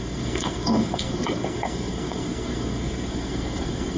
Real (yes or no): no